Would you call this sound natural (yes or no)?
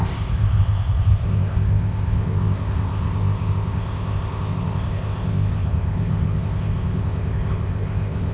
no